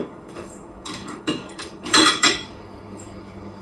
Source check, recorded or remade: remade